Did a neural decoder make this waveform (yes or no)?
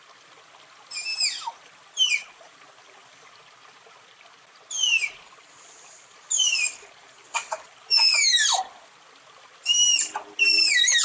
no